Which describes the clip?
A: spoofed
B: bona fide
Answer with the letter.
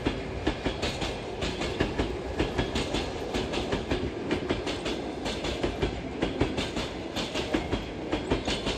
B